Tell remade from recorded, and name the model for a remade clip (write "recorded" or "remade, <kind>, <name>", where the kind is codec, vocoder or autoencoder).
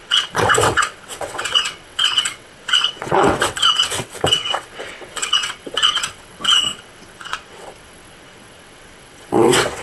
remade, vocoder, WaveNeXt